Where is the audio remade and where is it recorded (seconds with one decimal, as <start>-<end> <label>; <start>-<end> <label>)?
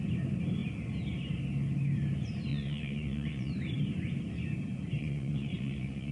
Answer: 0.0-2.5 recorded; 2.5-3.5 remade; 3.5-5.0 recorded; 5.0-6.1 remade